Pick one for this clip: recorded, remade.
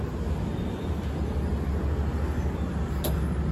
recorded